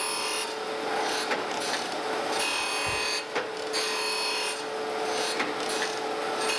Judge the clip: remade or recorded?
recorded